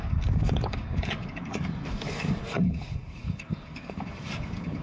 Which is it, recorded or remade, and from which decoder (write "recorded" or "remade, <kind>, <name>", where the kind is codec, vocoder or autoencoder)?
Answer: remade, codec, DAC